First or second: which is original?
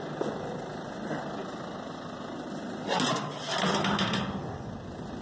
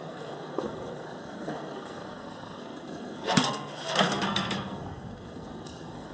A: first